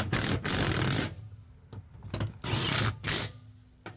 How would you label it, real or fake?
real